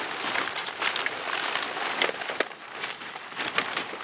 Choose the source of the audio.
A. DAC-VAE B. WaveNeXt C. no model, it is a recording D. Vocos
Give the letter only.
C